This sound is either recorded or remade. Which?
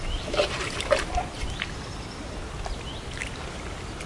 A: recorded